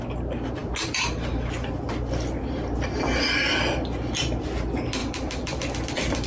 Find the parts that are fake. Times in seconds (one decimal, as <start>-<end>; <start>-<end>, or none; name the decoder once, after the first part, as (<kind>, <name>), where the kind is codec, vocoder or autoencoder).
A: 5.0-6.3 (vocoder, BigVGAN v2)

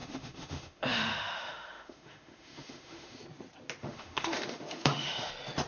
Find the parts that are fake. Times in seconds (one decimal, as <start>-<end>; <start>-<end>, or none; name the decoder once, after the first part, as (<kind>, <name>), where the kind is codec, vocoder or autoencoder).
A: 0.0-3.2 (autoencoder, DAC-VAE); 3.8-5.3

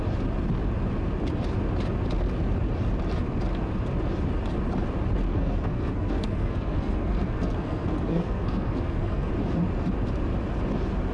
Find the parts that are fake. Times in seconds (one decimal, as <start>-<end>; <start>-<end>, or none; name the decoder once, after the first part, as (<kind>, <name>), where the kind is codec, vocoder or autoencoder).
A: 5.3-9.3 (codec, SNAC)

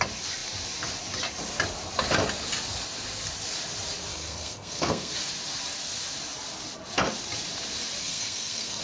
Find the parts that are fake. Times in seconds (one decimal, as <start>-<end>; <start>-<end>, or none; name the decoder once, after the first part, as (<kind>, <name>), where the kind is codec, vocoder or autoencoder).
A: 4.1-5.1 (codec, SNAC); 8.0-8.8

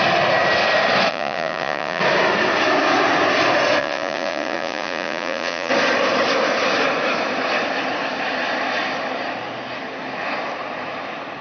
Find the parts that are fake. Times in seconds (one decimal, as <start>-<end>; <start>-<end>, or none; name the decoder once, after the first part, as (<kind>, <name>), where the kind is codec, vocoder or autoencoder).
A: 1.1-2.0 (vocoder, Vocos); 3.8-5.7